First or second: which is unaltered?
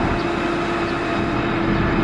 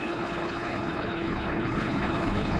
first